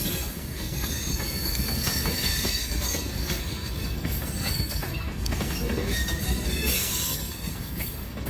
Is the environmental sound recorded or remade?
remade